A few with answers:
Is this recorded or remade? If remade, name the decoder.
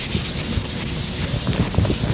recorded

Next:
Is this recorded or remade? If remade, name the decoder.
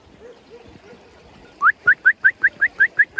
recorded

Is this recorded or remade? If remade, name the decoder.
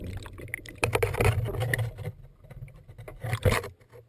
recorded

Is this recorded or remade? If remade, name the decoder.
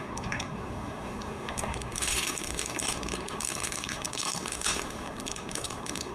remade, codec, SNAC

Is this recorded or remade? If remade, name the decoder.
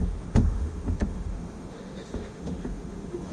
remade, autoencoder, DAC-VAE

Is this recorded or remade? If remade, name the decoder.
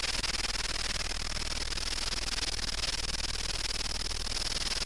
recorded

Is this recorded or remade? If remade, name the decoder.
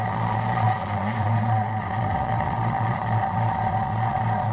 remade, vocoder, Vocos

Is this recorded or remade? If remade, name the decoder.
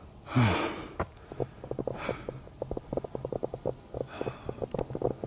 recorded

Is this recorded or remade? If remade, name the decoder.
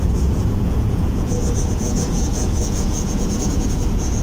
remade, vocoder, Vocos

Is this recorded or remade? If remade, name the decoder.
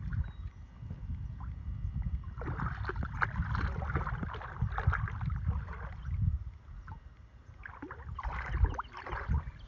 recorded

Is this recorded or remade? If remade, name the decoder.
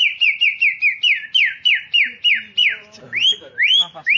recorded